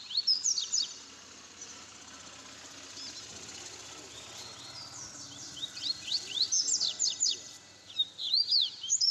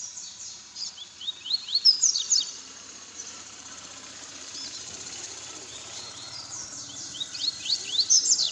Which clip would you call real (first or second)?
first